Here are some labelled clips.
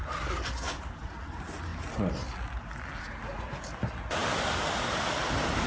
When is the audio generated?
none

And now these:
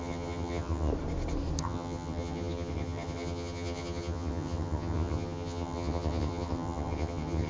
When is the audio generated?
0.0-0.9 (vocoder, HiFi-GAN); 1.6-7.5

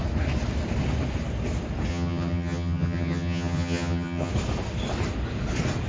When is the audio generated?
1.9-4.3 (vocoder, HiFi-GAN)

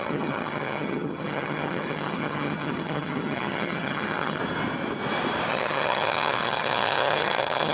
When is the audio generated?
0.0-4.4 (vocoder, HiFi-GAN); 5.5-7.7

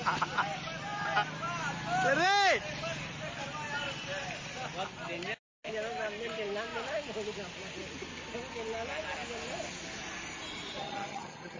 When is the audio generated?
10.8-11.6 (vocoder, HiFi-GAN)